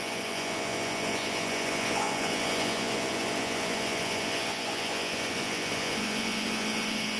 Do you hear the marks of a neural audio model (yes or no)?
yes